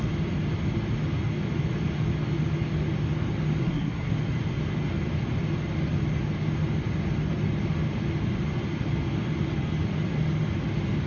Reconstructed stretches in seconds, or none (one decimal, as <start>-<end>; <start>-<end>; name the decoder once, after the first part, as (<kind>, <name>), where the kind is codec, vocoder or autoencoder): 3.6-4.1 (codec, SNAC)